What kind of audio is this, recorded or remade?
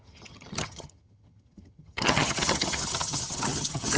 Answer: remade